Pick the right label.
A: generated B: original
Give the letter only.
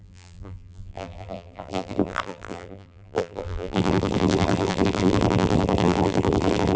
A